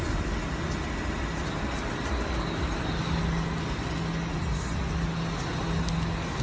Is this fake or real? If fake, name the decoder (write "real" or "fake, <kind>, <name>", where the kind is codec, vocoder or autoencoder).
real